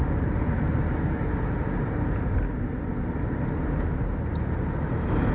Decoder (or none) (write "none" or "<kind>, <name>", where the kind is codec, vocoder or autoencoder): none